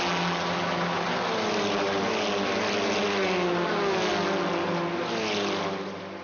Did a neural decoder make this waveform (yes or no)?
no